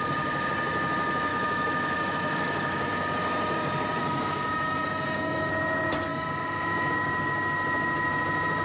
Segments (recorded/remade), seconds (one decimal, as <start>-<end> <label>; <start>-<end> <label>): 0.0-1.3 recorded; 1.3-2.9 remade; 2.9-4.0 recorded; 4.0-5.5 remade; 5.5-6.1 recorded; 6.1-6.9 remade; 6.9-8.6 recorded